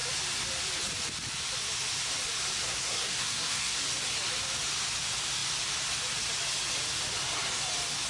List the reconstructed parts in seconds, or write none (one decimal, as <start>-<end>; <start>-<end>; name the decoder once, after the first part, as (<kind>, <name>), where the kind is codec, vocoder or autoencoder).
2.6-3.8 (codec, SNAC)